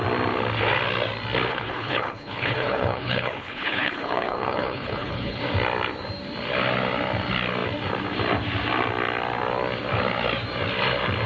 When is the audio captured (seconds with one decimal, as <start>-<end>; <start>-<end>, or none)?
0.0-1.5; 5.4-11.3